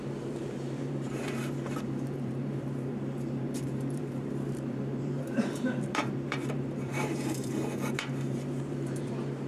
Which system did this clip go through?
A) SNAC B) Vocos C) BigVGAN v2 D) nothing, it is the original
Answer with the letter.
C